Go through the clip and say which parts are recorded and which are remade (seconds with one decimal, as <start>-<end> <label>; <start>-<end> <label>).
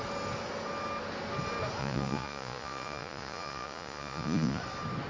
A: 0.0-1.8 recorded; 1.8-4.6 remade; 4.6-5.1 recorded